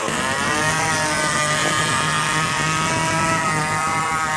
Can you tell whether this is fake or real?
real